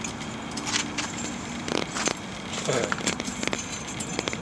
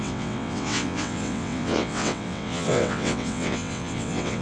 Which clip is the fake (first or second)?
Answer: second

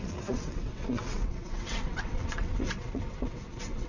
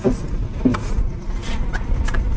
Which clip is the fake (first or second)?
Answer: first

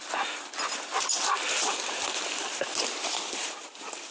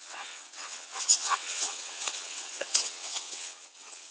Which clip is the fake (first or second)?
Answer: second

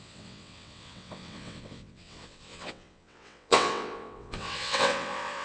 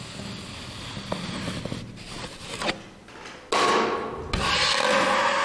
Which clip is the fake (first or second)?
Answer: first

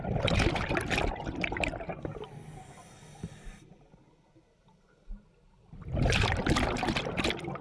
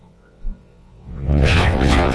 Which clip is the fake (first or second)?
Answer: second